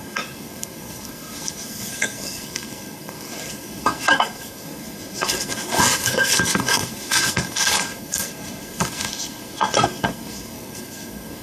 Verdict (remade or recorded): remade